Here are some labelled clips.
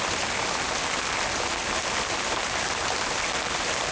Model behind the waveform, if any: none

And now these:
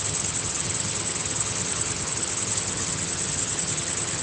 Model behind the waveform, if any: vocoder, HiFi-GAN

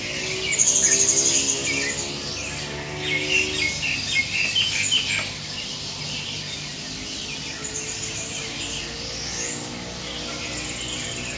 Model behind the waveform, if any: none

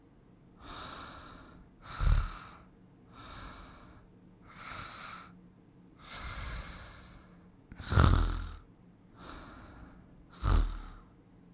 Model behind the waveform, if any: none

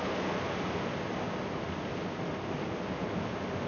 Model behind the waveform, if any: none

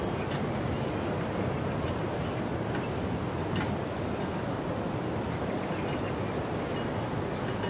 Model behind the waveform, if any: none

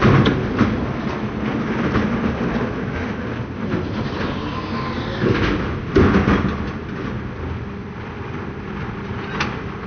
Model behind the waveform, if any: none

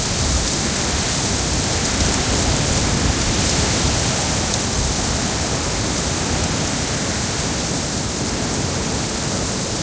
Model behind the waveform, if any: none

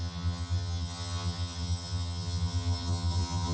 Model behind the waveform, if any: vocoder, HiFi-GAN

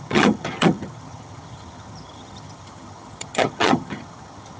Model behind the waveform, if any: vocoder, HiFi-GAN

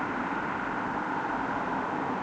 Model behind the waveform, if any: none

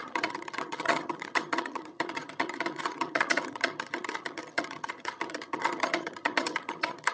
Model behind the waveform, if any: vocoder, HiFi-GAN